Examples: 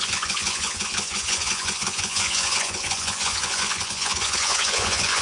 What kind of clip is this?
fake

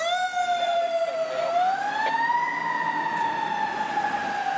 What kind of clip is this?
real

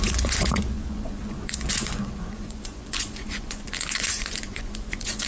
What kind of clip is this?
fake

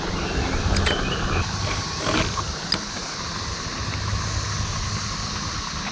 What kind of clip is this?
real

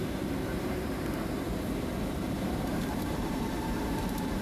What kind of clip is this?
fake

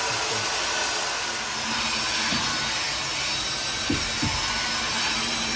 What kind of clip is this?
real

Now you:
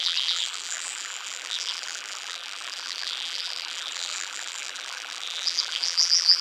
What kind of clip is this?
fake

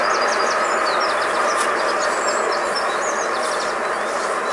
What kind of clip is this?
real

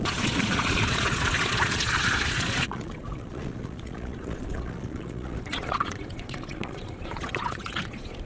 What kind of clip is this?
fake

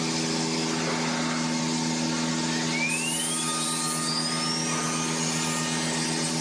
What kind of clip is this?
real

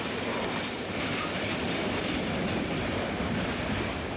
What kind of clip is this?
real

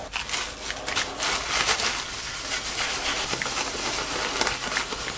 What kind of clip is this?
real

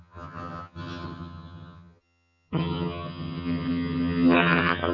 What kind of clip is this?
fake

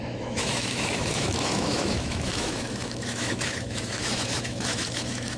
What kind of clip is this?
fake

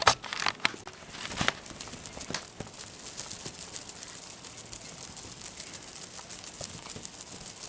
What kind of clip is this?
real